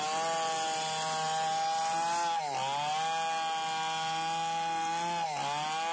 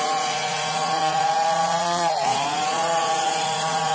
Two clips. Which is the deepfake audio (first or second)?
second